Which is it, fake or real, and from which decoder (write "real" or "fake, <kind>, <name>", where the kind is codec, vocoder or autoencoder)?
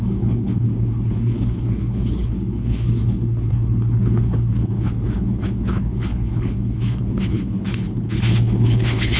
fake, codec, HILCodec